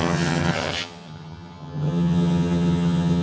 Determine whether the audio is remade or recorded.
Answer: remade